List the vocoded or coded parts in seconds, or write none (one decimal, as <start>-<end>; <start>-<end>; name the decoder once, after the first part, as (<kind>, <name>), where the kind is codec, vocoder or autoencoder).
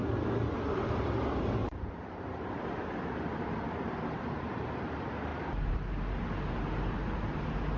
1.6-4.7 (vocoder, BigVGAN v2)